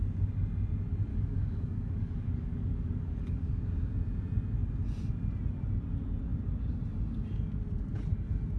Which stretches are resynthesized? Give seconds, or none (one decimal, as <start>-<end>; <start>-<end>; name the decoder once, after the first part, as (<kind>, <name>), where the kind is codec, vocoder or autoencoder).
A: 1.1-3.5 (codec, DAC)